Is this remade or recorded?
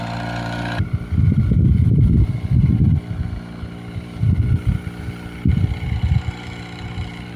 recorded